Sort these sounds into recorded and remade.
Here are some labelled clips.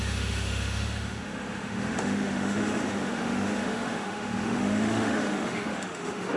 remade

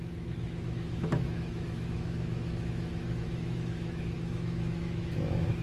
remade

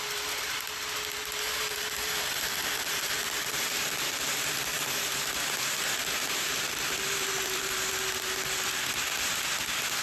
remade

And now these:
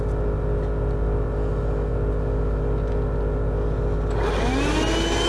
recorded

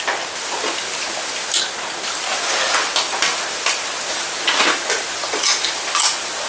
recorded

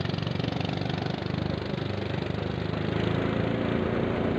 recorded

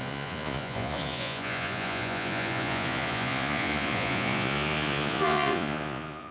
remade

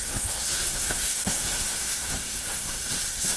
remade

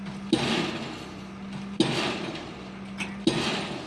recorded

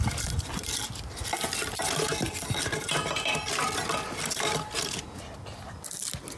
recorded